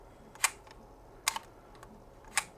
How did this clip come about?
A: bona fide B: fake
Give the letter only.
A